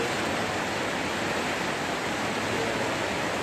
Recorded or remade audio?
recorded